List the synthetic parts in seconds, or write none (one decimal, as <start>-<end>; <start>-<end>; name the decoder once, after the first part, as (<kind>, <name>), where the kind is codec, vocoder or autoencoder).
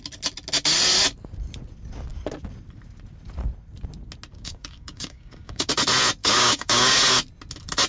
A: 4.3-5.7 (codec, DAC); 6.2-7.0